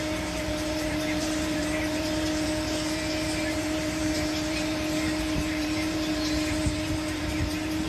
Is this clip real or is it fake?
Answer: fake